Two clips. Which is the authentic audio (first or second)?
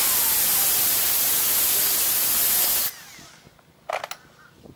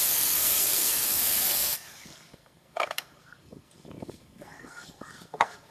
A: first